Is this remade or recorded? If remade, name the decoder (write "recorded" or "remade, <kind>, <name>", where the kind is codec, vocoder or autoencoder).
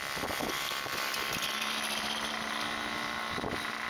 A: recorded